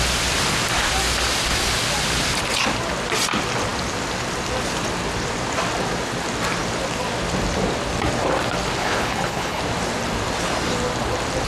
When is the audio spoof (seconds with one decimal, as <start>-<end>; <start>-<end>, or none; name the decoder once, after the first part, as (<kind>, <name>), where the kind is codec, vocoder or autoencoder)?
8.8-9.6 (codec, HILCodec)